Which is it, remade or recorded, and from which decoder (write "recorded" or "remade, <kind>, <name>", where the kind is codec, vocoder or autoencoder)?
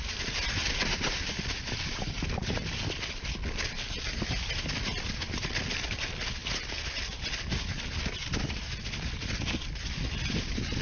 recorded